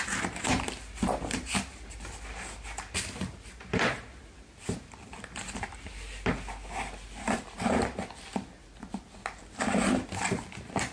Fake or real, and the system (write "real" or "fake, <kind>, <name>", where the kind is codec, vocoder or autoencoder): real